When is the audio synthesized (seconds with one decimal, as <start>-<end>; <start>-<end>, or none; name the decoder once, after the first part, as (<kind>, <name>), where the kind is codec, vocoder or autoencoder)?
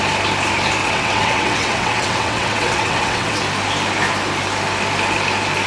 0.8-3.4 (vocoder, WaveNeXt)